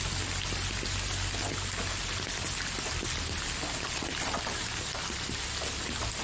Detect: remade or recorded recorded